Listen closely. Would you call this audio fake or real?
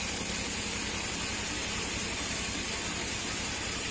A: real